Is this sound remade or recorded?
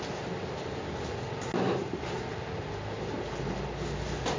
recorded